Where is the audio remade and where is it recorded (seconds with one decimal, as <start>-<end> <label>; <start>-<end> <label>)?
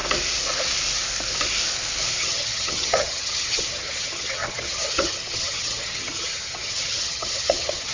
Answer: 0.0-2.2 recorded; 2.2-7.9 remade